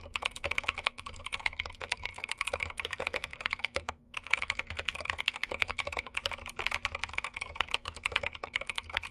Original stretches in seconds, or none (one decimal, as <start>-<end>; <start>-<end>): 6.2-7.1

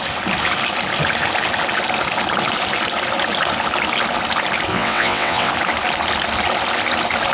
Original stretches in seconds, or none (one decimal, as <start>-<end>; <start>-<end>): 0.0-4.7; 5.5-7.3

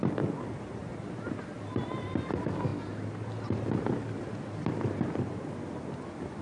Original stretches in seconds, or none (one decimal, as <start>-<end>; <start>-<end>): 0.8-2.0

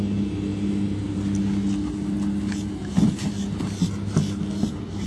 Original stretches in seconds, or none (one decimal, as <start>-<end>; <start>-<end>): 0.0-5.1

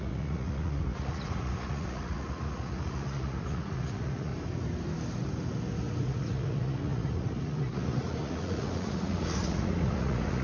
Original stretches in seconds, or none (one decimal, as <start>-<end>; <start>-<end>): 4.3-6.0